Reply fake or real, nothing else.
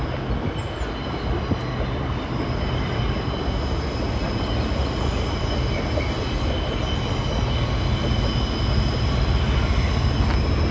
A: real